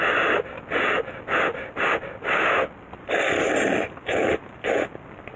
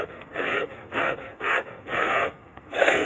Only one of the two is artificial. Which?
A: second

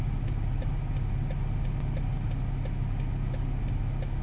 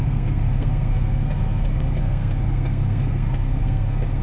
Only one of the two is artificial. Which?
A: second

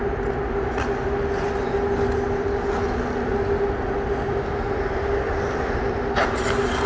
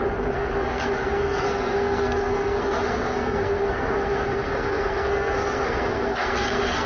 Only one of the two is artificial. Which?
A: second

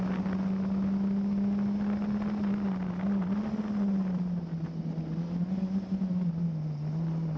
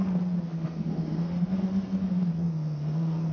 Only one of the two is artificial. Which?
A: second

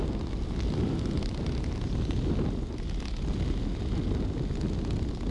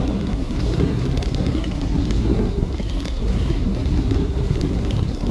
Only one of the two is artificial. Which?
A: second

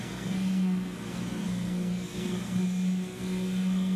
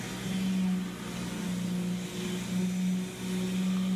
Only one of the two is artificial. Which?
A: first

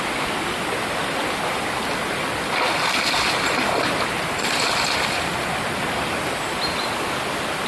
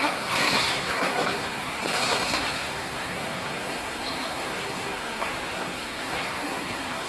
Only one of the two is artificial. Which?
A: second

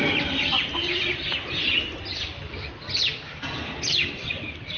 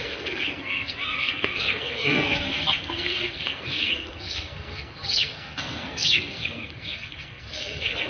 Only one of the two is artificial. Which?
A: second